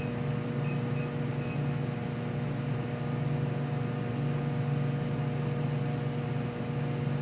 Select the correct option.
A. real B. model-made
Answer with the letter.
A